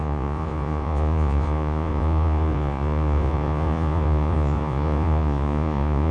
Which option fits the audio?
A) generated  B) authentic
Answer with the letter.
A